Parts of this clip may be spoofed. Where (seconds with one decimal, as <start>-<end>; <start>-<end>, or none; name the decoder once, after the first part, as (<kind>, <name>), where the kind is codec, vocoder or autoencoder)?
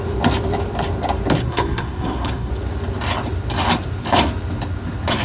1.4-2.5 (codec, SNAC)